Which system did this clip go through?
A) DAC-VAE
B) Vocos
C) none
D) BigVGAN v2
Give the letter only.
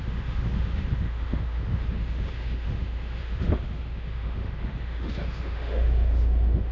A